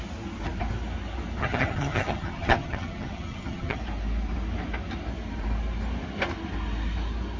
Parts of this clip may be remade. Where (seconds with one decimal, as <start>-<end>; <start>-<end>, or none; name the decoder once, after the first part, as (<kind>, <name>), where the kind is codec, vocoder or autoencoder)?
1.4-3.8 (vocoder, HiFi-GAN)